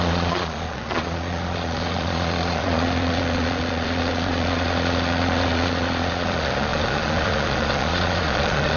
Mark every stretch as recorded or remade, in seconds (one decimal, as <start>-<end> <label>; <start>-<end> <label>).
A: 0.0-8.8 remade